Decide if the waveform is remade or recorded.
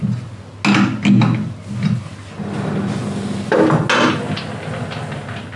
recorded